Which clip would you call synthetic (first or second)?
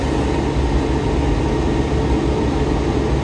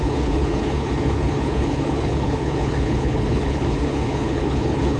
second